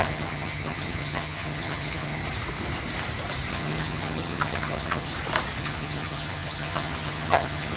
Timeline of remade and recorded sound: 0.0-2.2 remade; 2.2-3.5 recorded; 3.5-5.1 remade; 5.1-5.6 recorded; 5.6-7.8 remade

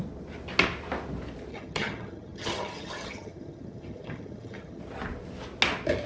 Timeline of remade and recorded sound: 0.0-1.5 recorded; 1.5-4.8 remade; 4.8-6.1 recorded

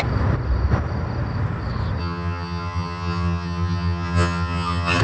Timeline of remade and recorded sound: 0.0-2.0 recorded; 2.0-5.0 remade

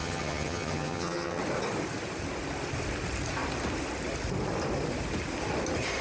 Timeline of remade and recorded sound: 0.0-1.4 remade; 1.4-6.0 recorded

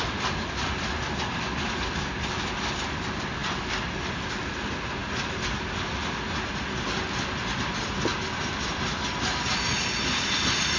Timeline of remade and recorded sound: 0.0-10.8 recorded

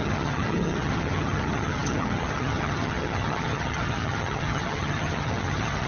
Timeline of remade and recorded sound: 0.0-5.9 remade

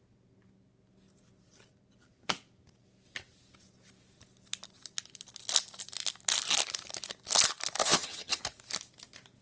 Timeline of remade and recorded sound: 0.0-7.8 recorded; 7.8-8.4 remade; 8.4-9.4 recorded